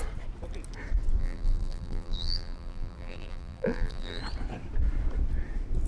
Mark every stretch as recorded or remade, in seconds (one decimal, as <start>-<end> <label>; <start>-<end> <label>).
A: 0.0-1.2 recorded; 1.2-4.2 remade; 4.2-5.9 recorded